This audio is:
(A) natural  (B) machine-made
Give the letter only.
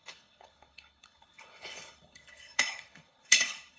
B